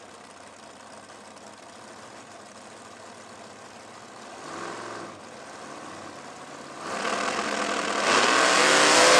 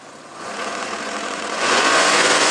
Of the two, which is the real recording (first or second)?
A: first